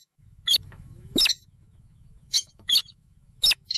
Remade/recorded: remade